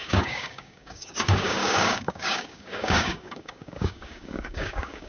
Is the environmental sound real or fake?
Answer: fake